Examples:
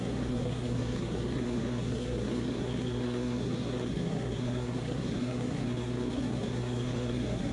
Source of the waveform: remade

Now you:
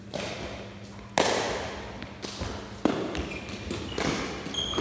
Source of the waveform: recorded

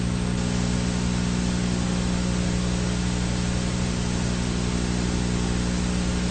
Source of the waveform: recorded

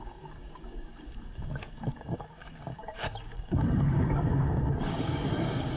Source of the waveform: remade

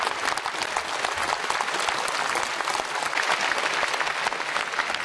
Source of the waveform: recorded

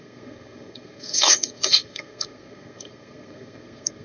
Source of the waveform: remade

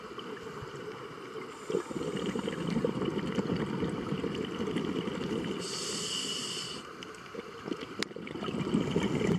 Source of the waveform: recorded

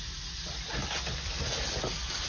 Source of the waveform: recorded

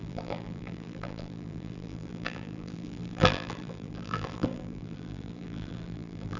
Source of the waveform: remade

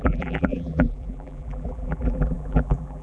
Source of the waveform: remade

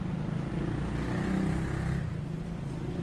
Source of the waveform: recorded